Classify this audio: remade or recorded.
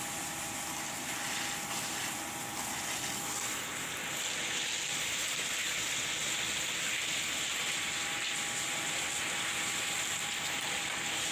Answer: recorded